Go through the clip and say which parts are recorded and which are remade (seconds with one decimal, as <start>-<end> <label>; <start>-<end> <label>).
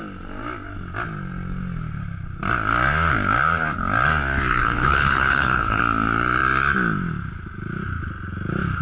0.0-4.6 recorded; 4.6-5.8 remade; 5.8-8.8 recorded